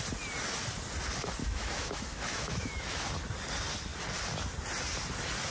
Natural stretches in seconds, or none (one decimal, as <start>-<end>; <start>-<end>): 0.0-1.4; 3.1-5.5